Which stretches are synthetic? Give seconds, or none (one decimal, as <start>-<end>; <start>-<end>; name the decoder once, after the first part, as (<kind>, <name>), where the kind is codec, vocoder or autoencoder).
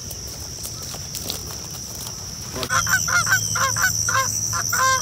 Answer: 4.0-4.6 (codec, DAC)